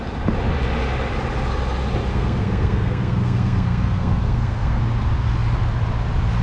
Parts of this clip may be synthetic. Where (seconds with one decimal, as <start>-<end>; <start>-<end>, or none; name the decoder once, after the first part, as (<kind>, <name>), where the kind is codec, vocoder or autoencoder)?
2.1-4.8 (codec, SNAC)